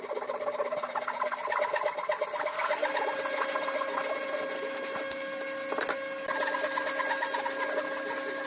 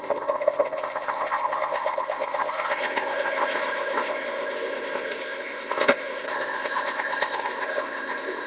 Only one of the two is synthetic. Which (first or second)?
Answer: second